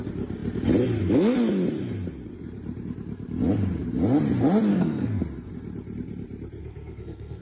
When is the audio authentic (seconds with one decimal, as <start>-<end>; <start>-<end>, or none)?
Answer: 0.0-4.7; 5.2-6.6